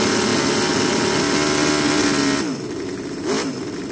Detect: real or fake real